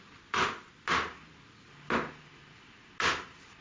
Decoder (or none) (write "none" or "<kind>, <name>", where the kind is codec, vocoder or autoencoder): none